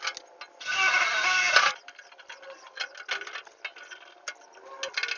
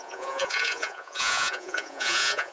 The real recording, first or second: first